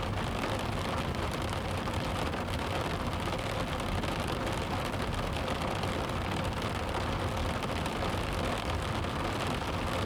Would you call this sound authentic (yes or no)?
yes